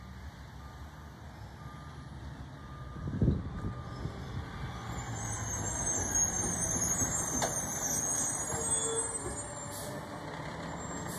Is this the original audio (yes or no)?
yes